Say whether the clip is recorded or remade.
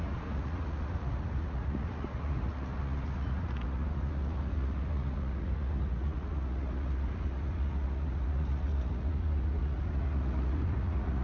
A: remade